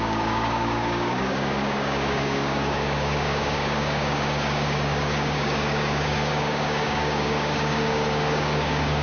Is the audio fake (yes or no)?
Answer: yes